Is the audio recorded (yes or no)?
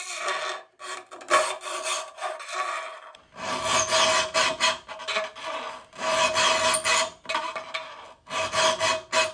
yes